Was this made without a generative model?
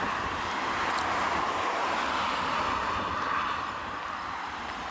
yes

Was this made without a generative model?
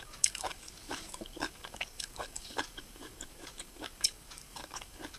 no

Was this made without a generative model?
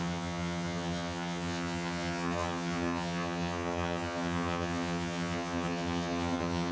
no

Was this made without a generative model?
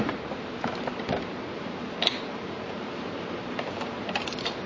no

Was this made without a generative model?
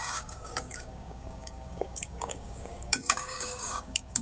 no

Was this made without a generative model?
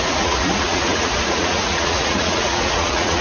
no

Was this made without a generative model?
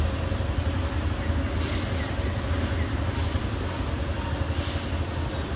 yes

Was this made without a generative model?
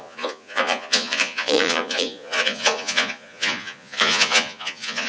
no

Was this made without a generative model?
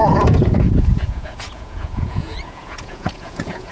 no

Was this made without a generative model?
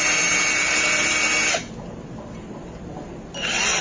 yes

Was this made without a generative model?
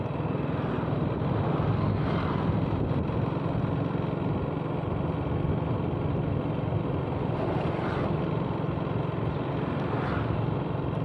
yes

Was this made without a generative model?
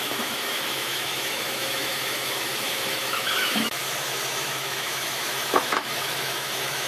no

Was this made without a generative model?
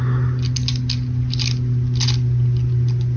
yes